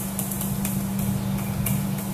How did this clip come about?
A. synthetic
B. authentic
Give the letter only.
B